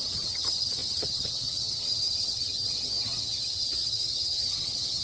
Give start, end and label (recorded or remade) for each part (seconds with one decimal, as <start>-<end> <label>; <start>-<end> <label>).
0.0-5.0 remade

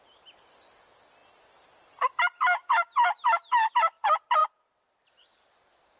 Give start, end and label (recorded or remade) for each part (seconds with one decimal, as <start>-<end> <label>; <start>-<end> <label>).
0.0-6.0 recorded

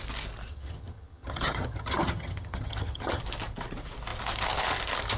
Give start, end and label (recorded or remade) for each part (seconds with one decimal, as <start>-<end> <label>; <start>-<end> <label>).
0.0-0.5 recorded; 0.5-3.2 remade; 3.2-5.2 recorded

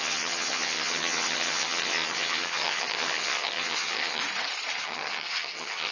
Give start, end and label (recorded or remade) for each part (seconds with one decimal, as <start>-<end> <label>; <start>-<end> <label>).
0.0-4.2 remade; 4.2-4.8 recorded; 4.8-5.9 remade

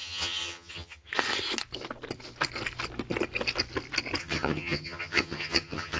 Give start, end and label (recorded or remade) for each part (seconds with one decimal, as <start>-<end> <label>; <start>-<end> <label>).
0.0-1.1 remade; 1.1-4.2 recorded; 4.2-6.0 remade

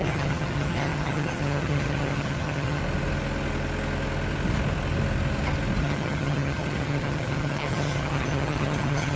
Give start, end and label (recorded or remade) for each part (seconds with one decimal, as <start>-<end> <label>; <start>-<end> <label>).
0.0-2.8 remade; 2.8-5.8 recorded; 5.8-9.2 remade

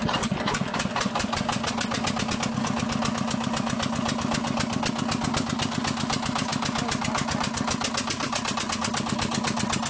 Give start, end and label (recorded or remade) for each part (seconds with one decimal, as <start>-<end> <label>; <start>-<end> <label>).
0.0-9.9 recorded